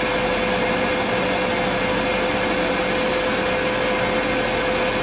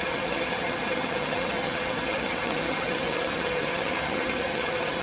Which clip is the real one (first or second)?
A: first